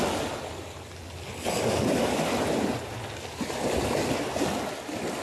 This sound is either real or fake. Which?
real